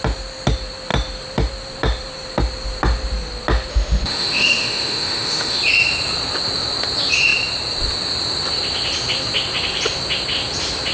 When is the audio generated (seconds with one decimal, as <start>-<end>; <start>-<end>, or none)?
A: 3.7-5.6